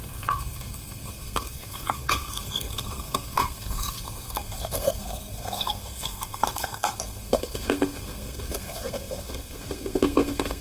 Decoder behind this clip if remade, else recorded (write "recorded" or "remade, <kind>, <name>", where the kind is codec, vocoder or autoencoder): remade, codec, SNAC